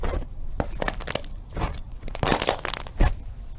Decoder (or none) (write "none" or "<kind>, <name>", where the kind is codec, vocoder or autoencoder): none